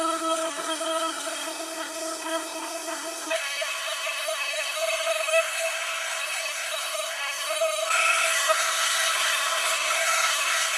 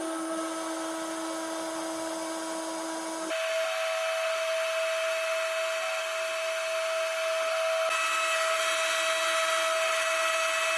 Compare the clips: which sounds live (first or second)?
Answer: second